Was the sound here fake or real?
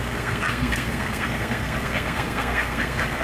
fake